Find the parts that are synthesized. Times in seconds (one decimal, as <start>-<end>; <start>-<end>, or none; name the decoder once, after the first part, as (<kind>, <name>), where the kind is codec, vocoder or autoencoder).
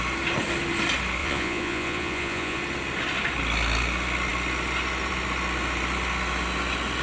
1.2-2.6 (vocoder, Vocos)